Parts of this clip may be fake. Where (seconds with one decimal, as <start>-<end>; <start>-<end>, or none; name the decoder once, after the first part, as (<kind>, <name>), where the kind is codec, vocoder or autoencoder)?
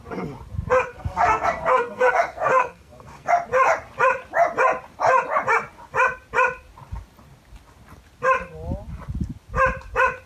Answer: 0.9-3.3 (codec, SNAC)